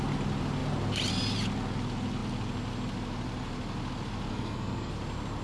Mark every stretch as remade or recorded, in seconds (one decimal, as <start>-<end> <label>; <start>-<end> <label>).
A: 0.0-4.3 recorded; 4.3-4.9 remade; 4.9-5.4 recorded